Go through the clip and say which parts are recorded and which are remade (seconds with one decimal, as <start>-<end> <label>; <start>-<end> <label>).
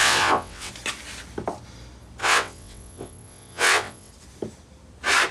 0.0-0.7 remade; 0.7-2.2 recorded; 2.2-4.1 remade; 4.1-5.3 recorded